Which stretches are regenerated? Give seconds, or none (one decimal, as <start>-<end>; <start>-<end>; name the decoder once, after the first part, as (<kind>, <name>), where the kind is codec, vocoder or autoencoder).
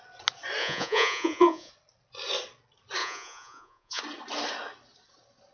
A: 0.6-1.7 (vocoder, Vocos); 3.0-4.0